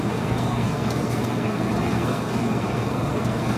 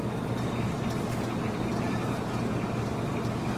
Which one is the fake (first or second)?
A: first